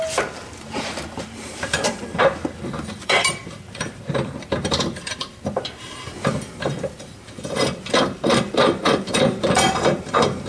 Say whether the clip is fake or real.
fake